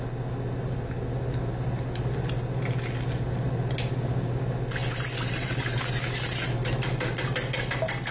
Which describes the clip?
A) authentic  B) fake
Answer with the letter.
A